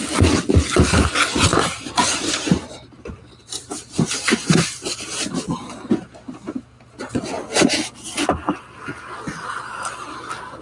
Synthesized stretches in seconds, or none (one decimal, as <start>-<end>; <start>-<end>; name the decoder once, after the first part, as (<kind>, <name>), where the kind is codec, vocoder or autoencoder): 1.5-5.7 (vocoder, BigVGAN v2)